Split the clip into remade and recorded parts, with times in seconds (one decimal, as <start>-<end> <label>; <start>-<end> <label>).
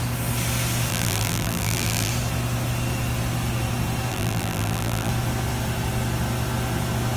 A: 0.0-0.9 recorded; 0.9-2.1 remade; 2.1-4.1 recorded; 4.1-5.1 remade; 5.1-7.2 recorded